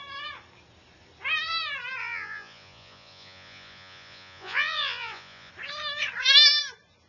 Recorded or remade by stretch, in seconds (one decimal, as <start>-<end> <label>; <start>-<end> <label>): 0.0-2.0 recorded; 2.0-5.5 remade; 5.5-7.1 recorded